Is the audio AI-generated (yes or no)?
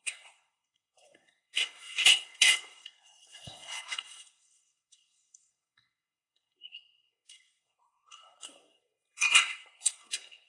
yes